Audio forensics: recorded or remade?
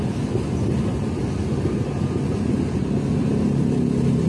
recorded